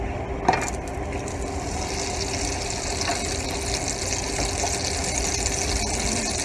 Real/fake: real